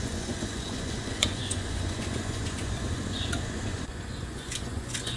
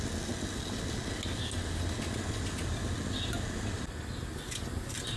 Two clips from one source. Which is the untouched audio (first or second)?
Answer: second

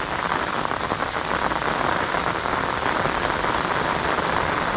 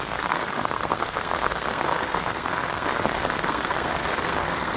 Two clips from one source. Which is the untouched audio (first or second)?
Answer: first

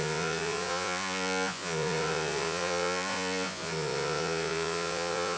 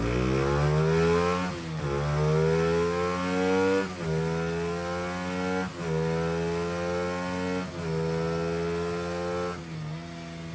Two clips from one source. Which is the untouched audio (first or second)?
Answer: second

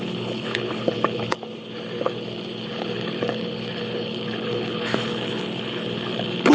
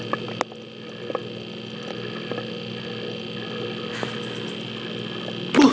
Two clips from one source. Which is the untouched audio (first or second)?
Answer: second